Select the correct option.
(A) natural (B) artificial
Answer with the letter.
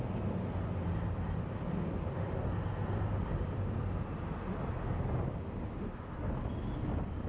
A